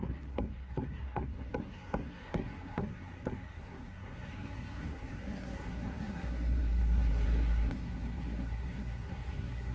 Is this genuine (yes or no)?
no